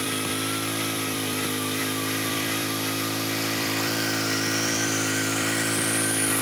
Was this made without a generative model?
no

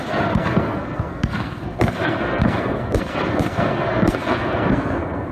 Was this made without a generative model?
no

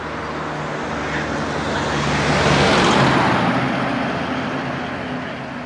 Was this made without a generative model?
yes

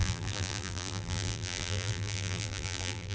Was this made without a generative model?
no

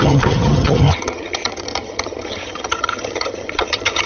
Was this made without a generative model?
no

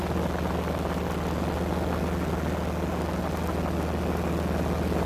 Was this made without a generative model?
yes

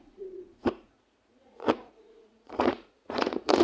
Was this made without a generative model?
no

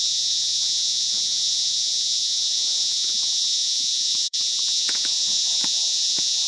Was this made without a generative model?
no